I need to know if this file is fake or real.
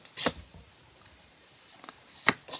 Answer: fake